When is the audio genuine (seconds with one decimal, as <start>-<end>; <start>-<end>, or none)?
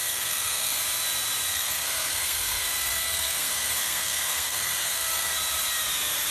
0.8-1.5; 5.3-6.3